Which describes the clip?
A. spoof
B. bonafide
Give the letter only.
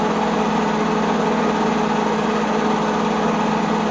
B